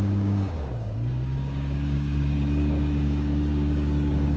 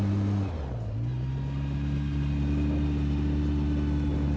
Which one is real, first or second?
second